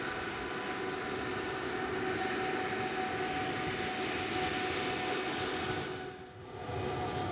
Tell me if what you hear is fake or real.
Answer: real